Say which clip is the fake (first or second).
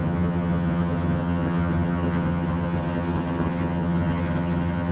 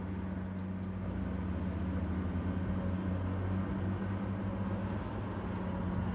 first